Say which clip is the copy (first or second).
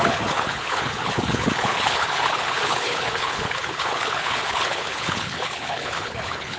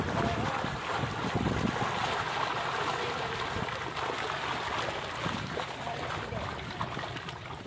first